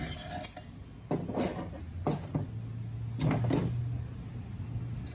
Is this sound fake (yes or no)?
no